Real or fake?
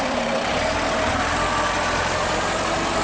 fake